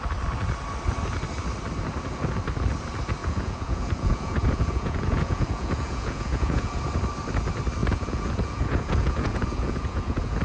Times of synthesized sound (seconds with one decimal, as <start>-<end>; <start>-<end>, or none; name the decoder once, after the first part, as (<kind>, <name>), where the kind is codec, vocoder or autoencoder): 3.2-6.8 (vocoder, Vocos); 7.8-10.4